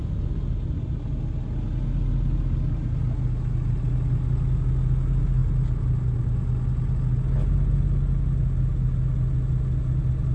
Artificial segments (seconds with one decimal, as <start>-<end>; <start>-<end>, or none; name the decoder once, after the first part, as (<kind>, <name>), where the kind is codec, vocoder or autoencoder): none